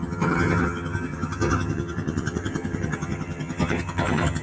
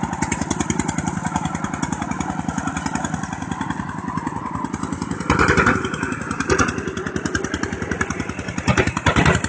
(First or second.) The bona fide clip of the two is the second